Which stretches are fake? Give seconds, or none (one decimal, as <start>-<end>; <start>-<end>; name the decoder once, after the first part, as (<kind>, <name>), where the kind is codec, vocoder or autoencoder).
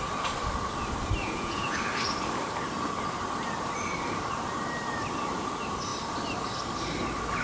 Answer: 1.2-1.8 (vocoder, Vocos)